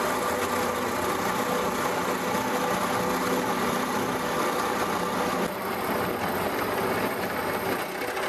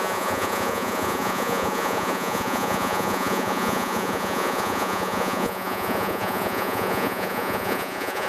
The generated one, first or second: second